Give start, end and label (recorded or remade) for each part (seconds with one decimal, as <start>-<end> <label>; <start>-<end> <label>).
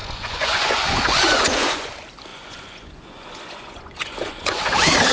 0.0-1.9 remade; 1.9-2.3 recorded; 2.3-4.6 remade; 4.6-5.1 recorded